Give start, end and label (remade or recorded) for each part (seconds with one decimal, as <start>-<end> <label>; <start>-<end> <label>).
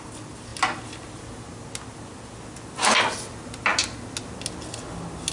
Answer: 0.0-5.3 recorded